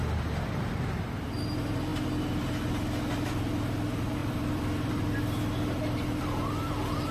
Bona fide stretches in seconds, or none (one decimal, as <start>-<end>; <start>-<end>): 0.0-4.2; 5.2-7.1